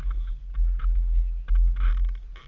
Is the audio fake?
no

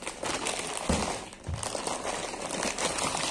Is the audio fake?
no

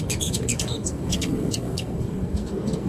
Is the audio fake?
yes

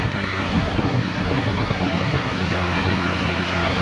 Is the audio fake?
yes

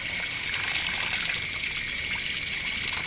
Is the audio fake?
no